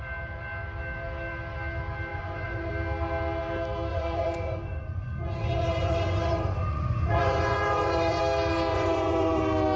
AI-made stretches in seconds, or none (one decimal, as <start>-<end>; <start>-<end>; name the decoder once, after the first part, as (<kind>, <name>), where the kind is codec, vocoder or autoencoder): 2.1-2.7 (vocoder, Vocos); 3.9-8.2; 8.7-9.4